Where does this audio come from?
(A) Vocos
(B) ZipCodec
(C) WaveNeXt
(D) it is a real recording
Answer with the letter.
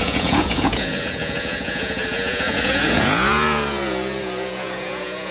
A